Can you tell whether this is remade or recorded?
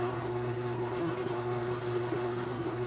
remade